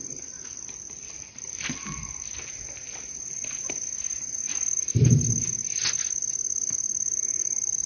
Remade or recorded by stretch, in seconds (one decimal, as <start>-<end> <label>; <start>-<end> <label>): 0.0-7.9 recorded